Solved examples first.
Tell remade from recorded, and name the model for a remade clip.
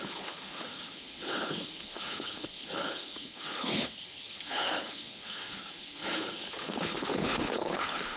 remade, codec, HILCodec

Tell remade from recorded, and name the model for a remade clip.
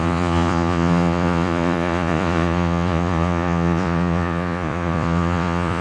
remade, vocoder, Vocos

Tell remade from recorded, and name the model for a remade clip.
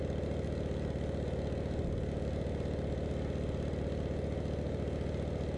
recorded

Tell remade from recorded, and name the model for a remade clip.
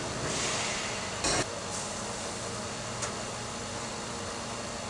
recorded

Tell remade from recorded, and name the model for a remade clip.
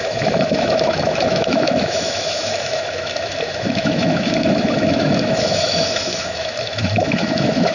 remade, autoencoder, DAC-VAE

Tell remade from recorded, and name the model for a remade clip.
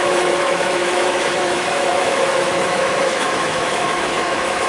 remade, autoencoder, DAC-VAE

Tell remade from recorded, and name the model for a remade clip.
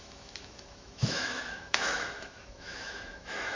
remade, autoencoder, DAC-VAE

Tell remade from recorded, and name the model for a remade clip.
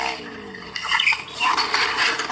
recorded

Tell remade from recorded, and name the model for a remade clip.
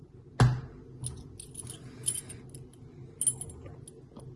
recorded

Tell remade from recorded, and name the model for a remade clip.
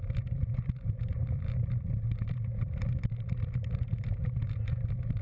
remade, vocoder, BigVGAN v2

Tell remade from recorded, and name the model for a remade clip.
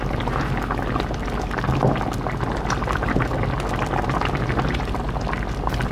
recorded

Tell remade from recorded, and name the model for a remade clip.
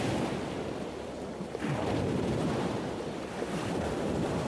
recorded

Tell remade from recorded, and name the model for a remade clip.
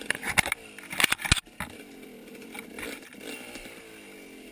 recorded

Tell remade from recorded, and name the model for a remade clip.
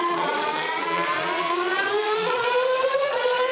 remade, vocoder, Vocos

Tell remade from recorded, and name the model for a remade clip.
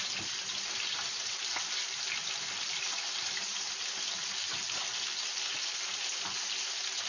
recorded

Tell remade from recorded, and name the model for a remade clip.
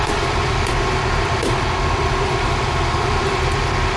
remade, vocoder, BigVGAN v2